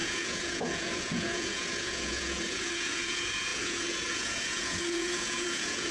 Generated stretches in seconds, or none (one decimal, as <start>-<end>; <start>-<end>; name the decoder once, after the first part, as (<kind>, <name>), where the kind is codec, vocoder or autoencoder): 0.0-5.9 (vocoder, Vocos)